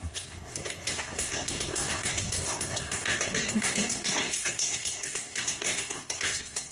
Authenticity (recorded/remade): remade